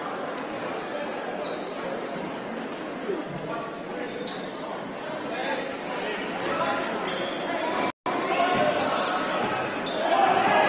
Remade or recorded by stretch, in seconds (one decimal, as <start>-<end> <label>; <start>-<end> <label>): 0.0-10.7 recorded

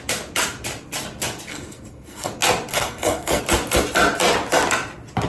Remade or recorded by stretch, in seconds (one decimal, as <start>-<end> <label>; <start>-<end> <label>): 0.0-1.5 recorded; 1.5-2.3 remade; 2.3-2.7 recorded; 2.7-3.4 remade; 3.4-5.3 recorded

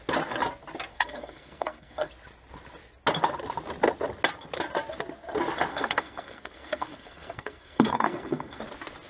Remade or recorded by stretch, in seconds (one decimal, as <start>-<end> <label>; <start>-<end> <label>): 0.0-0.9 recorded; 0.9-2.1 remade; 2.1-5.7 recorded; 5.7-8.6 remade; 8.6-9.1 recorded

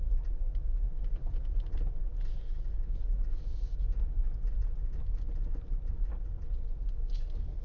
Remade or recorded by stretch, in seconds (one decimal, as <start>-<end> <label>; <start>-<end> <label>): 0.0-7.6 recorded

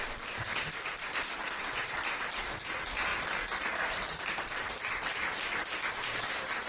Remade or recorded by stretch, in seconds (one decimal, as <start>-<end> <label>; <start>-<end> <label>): 0.0-6.7 recorded

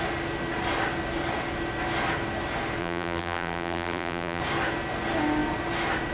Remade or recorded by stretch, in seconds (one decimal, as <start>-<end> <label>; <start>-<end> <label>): 0.0-2.8 recorded; 2.8-4.4 remade; 4.4-6.1 recorded